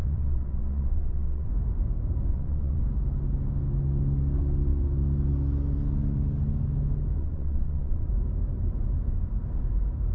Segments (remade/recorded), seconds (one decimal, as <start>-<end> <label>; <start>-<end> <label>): 0.0-1.5 remade; 1.5-2.3 recorded; 2.3-2.8 remade; 2.8-7.2 recorded; 7.2-8.1 remade; 8.1-10.1 recorded